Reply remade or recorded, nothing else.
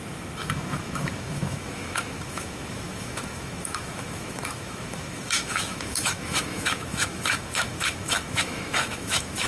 remade